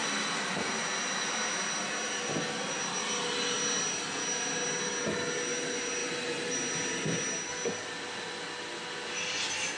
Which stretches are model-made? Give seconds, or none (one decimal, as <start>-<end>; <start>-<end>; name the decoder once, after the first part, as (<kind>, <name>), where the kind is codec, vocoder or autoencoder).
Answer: none